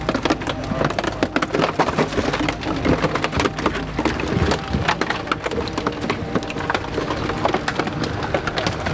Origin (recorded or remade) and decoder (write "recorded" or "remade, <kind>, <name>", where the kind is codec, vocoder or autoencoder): recorded